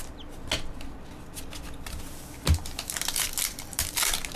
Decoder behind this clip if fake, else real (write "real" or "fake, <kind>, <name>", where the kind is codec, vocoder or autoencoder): real